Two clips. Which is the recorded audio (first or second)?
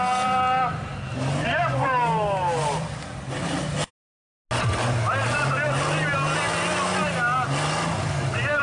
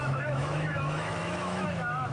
first